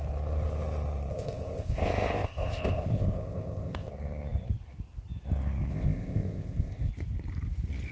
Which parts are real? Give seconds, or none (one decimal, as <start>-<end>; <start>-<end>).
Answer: 0.0-1.1; 3.9-5.7; 6.9-7.9